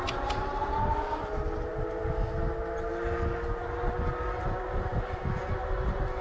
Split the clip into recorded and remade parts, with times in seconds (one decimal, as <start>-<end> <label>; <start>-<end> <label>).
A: 0.0-6.2 recorded